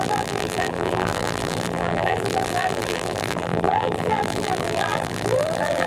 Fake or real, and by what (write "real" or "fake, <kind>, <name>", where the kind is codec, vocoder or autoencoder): fake, vocoder, BigVGAN v2